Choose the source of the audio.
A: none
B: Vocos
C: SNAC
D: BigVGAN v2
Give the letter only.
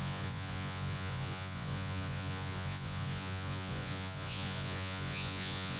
B